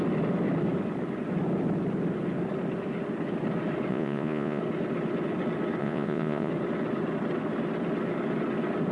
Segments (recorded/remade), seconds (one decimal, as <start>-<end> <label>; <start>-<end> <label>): 0.0-3.9 recorded; 3.9-4.6 remade; 4.6-5.8 recorded; 5.8-6.5 remade; 6.5-8.9 recorded